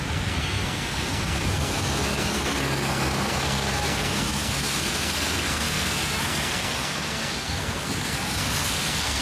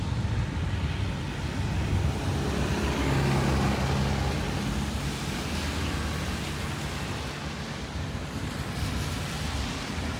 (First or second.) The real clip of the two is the second